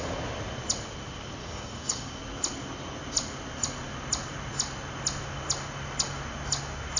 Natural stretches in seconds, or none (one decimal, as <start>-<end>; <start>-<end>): 0.0-1.4; 2.2-7.0